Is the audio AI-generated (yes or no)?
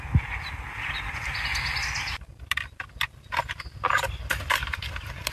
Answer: no